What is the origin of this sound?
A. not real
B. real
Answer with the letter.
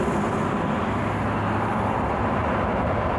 B